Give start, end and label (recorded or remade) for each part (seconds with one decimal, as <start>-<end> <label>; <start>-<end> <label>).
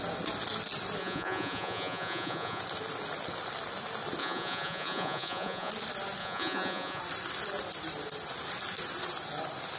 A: 0.0-1.0 recorded; 1.0-2.6 remade; 2.6-4.2 recorded; 4.2-5.7 remade; 5.7-6.2 recorded; 6.2-7.0 remade; 7.0-9.8 recorded